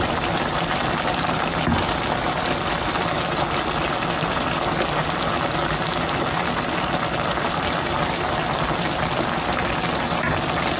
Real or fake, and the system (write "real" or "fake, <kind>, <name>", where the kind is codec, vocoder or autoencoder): real